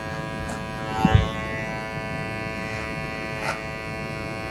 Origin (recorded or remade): recorded